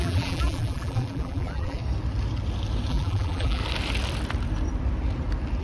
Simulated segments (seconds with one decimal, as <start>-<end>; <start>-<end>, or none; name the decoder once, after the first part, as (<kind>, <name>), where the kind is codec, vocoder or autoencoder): 0.0-1.8 (vocoder, BigVGAN v2); 2.9-3.6